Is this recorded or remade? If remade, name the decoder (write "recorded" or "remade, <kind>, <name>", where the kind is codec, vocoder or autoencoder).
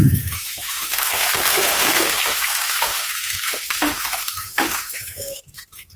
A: remade, autoencoder, DAC-VAE